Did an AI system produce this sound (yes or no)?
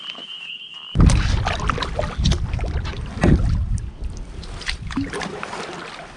no